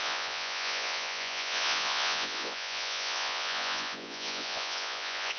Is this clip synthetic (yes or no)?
yes